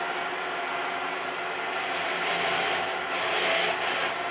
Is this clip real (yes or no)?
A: yes